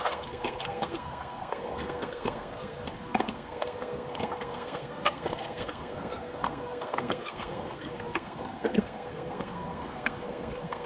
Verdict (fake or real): fake